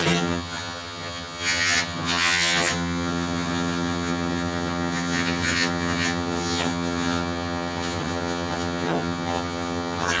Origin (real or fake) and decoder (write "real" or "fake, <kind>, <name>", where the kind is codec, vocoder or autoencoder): fake, vocoder, HiFi-GAN